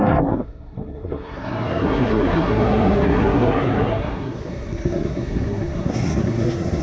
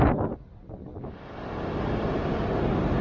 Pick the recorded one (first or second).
second